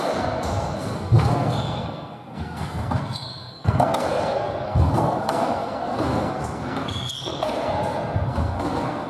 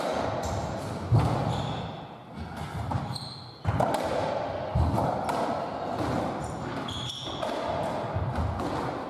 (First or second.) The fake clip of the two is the first